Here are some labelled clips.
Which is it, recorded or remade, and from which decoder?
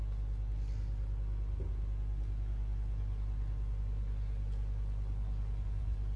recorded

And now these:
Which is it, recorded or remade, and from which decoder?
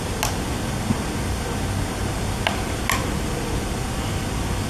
recorded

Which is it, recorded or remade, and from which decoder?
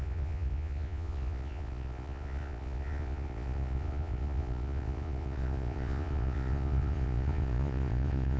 remade, vocoder, Vocos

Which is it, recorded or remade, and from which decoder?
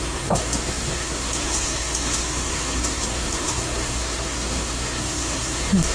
remade, codec, SNAC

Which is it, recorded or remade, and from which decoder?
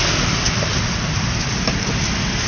recorded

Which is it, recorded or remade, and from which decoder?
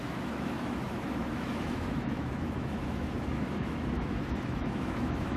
remade, autoencoder, DAC-VAE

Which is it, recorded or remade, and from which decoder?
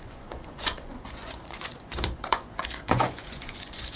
remade, vocoder, Vocos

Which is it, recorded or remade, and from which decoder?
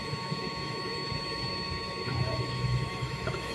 remade, autoencoder, DAC-VAE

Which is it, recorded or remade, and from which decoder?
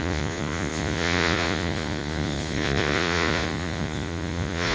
remade, vocoder, Vocos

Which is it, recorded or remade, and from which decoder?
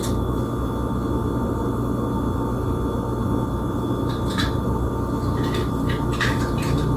recorded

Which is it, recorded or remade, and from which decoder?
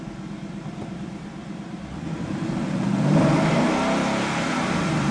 remade, vocoder, BigVGAN v2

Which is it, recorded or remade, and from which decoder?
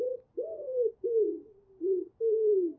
recorded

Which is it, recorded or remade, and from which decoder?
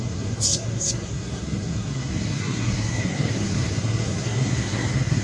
remade, codec, SNAC